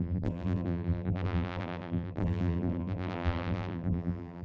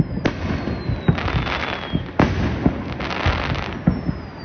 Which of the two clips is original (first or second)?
second